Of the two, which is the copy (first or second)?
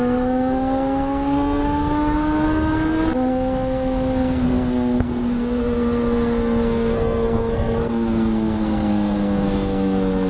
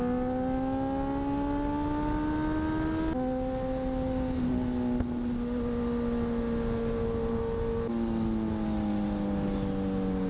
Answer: first